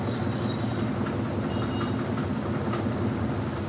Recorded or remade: recorded